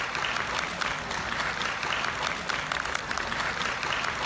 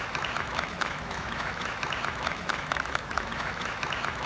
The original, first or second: first